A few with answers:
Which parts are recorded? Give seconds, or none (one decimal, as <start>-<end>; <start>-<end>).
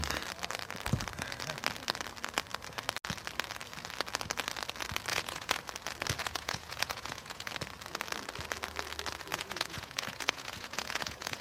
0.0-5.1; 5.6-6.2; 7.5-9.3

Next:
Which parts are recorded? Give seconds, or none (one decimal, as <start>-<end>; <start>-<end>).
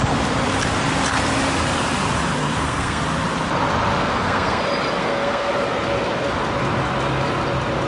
0.0-2.4; 3.0-4.0; 4.6-5.0; 5.5-7.9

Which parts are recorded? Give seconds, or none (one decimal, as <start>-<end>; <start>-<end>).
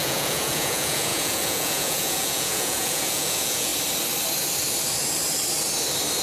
3.7-6.2